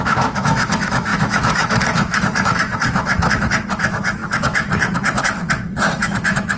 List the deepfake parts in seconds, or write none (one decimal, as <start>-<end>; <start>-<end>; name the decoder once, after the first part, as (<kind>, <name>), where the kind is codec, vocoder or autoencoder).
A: 0.0-6.6 (autoencoder, DAC-VAE)

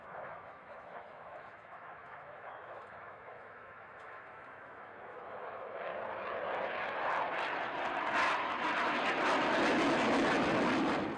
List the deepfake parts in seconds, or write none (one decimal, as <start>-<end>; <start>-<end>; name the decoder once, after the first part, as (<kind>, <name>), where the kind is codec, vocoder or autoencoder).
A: 0.0-5.9 (autoencoder, DAC-VAE)

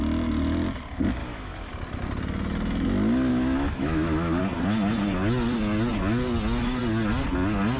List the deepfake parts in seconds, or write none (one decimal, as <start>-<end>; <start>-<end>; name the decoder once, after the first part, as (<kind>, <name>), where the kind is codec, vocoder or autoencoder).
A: 1.2-1.7 (autoencoder, DAC-VAE); 3.3-4.4

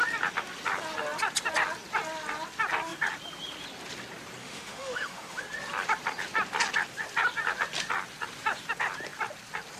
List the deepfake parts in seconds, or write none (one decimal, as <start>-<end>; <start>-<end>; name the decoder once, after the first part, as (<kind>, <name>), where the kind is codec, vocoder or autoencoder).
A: 4.4-5.4 (autoencoder, DAC-VAE)

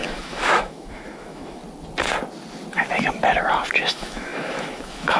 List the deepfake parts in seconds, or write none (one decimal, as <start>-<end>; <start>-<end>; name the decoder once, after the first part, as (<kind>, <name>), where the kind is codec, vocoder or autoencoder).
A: 0.0-1.6 (autoencoder, DAC-VAE); 3.9-5.2

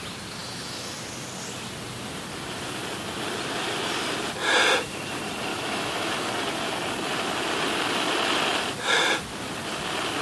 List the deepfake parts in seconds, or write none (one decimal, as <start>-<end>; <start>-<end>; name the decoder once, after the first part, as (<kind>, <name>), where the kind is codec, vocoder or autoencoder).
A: 0.4-1.0 (autoencoder, DAC-VAE); 5.5-6.3

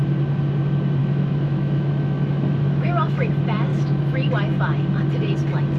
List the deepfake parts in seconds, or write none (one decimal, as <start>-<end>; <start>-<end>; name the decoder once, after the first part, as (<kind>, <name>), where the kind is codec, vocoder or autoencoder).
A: 1.0-3.3 (autoencoder, DAC-VAE); 3.7-4.3